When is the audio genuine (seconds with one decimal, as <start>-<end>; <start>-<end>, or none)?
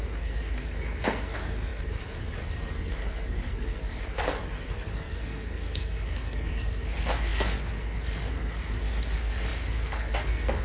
none